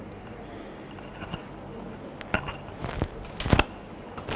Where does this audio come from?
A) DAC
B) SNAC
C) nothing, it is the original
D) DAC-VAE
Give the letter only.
C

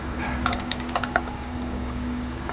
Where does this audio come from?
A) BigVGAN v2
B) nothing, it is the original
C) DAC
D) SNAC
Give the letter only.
C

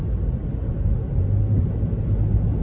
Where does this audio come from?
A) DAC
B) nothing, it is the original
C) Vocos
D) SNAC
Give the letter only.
B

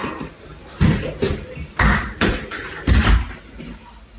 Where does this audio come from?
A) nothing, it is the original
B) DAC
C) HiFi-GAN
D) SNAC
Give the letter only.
A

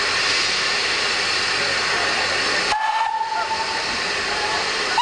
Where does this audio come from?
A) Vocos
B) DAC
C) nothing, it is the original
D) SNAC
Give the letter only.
C